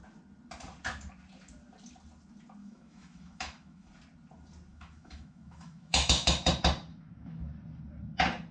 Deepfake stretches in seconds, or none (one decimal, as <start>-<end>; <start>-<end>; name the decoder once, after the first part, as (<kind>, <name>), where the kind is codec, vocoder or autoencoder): 2.6-3.9 (autoencoder, DAC-VAE); 4.7-6.5; 6.9-7.5